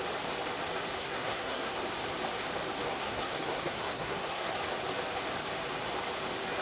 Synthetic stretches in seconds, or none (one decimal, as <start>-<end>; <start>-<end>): 1.0-1.8; 2.9-4.5